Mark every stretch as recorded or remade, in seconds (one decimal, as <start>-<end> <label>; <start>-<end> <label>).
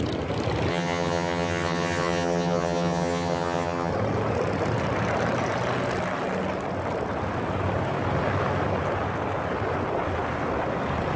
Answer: 0.0-0.7 recorded; 0.7-3.9 remade; 3.9-11.2 recorded